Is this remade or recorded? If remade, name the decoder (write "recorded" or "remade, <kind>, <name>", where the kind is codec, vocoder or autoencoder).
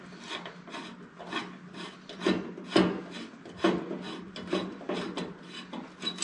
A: recorded